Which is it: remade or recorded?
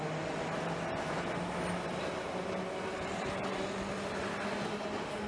recorded